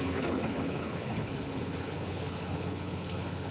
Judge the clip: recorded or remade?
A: remade